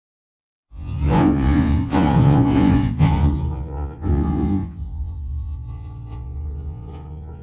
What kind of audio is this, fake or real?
fake